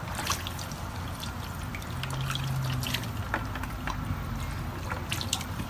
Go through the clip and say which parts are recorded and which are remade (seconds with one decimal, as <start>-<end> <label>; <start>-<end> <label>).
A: 0.0-5.7 recorded